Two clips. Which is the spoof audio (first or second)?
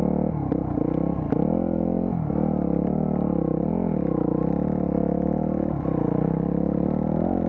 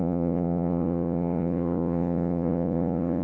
second